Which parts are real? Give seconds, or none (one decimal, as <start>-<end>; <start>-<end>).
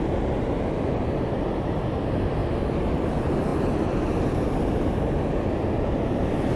0.0-6.6